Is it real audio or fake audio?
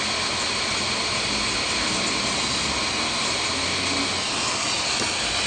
real